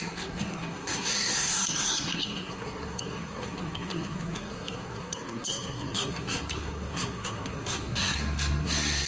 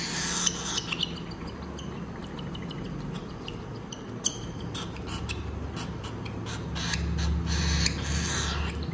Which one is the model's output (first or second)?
first